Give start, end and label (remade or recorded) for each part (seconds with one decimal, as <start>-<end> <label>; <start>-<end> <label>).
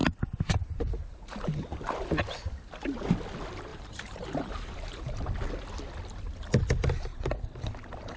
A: 0.0-1.0 recorded; 1.0-1.5 remade; 1.5-3.7 recorded; 3.7-5.3 remade; 5.3-8.2 recorded